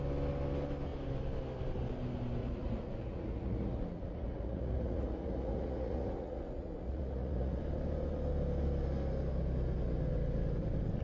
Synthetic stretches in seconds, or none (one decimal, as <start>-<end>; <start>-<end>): 2.4-7.6